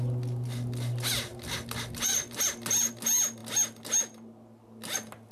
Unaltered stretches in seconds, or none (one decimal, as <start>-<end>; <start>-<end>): 0.0-5.3